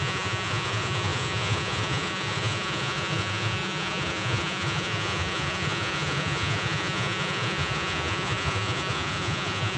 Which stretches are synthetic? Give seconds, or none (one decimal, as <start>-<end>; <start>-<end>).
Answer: 0.0-9.8